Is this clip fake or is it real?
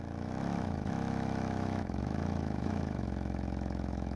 fake